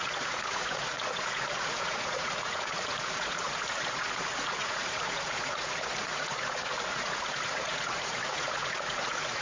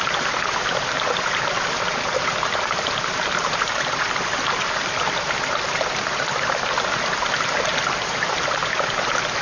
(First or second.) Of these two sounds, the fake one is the first